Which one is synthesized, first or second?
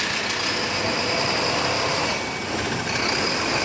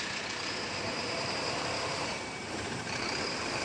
second